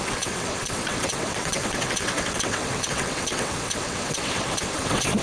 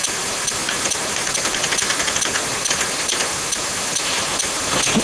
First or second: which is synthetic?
first